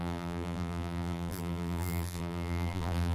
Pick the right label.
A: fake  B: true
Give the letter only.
A